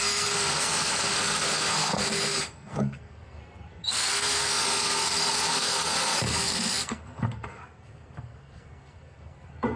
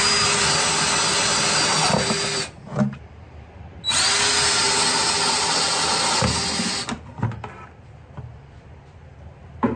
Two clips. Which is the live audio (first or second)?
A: second